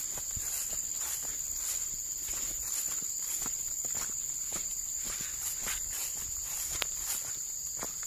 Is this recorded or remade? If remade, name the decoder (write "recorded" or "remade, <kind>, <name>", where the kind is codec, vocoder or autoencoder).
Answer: recorded